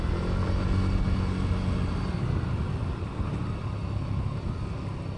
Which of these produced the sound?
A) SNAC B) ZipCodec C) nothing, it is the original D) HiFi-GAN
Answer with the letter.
C